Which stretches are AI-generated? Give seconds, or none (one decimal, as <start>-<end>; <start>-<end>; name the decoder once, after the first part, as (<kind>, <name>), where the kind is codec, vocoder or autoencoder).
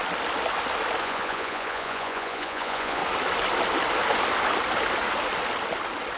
1.0-3.0 (vocoder, Vocos)